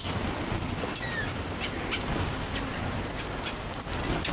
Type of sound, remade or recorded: recorded